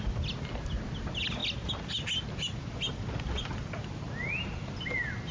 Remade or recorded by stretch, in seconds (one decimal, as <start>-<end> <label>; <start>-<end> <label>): 0.0-5.3 recorded